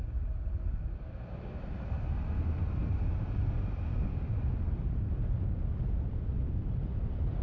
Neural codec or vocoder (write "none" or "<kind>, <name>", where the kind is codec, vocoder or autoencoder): none